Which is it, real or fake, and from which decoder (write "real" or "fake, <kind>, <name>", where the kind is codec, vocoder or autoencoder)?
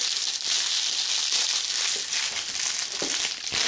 real